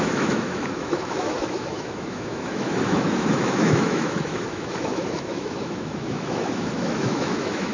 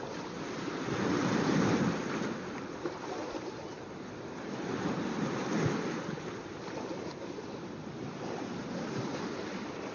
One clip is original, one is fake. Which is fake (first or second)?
first